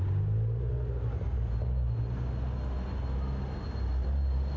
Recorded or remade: recorded